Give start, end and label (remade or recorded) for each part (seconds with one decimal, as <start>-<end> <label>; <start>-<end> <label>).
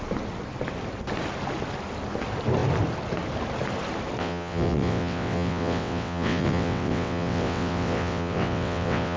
0.0-4.2 recorded; 4.2-9.2 remade